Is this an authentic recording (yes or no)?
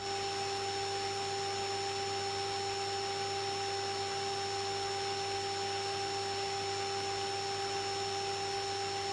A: yes